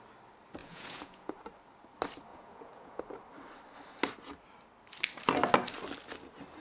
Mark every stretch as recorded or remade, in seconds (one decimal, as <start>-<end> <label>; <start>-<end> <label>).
0.0-0.6 recorded; 0.6-1.3 remade; 1.3-2.3 recorded; 2.3-3.0 remade; 3.0-6.6 recorded